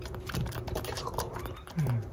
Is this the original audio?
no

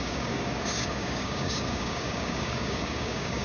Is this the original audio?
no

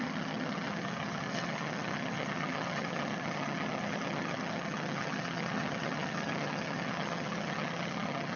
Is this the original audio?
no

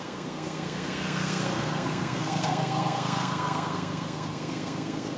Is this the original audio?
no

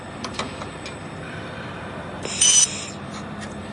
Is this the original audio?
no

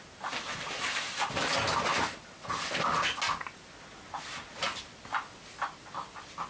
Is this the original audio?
yes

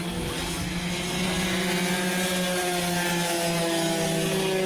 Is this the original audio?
yes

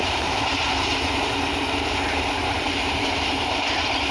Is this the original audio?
no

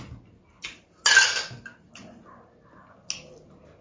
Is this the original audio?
yes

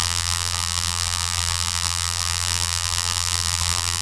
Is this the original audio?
no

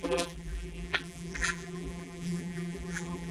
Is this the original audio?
no